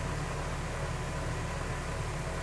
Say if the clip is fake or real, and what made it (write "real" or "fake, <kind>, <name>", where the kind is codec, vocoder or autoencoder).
real